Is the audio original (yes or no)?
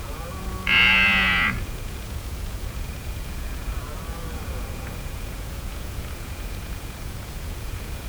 no